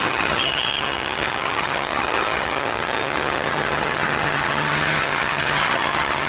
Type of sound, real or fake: fake